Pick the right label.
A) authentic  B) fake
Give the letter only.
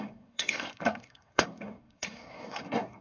B